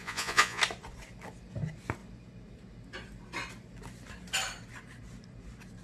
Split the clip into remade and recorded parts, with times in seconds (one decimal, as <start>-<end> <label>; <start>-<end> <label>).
0.0-0.6 remade; 0.6-5.8 recorded